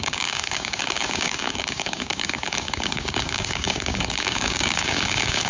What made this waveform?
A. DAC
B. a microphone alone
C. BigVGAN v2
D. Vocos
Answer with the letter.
A